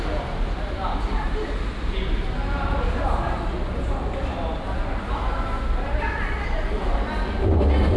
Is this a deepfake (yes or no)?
no